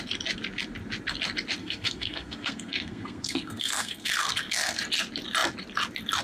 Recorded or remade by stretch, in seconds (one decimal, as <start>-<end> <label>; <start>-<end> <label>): 0.0-1.6 recorded; 1.6-4.8 remade; 4.8-6.2 recorded